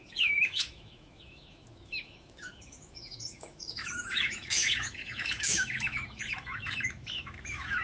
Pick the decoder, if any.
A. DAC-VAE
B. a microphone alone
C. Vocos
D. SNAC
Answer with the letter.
A